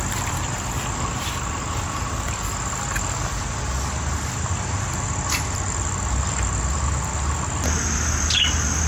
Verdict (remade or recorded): recorded